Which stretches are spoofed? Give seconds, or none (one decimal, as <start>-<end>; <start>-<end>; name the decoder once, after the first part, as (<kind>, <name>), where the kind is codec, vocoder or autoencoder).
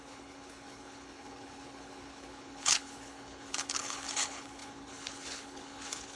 0.0-6.2 (codec, HILCodec)